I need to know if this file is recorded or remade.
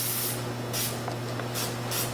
recorded